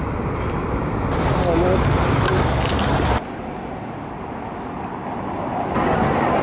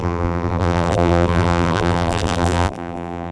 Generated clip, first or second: second